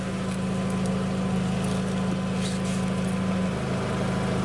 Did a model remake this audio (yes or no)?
no